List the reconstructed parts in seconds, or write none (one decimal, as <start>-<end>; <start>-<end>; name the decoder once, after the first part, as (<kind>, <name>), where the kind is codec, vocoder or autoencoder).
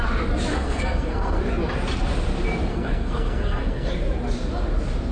0.5-1.4 (codec, SNAC); 2.7-3.9